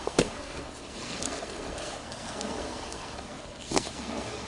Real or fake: fake